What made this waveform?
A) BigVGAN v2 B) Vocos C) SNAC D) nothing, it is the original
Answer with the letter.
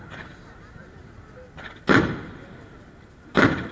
D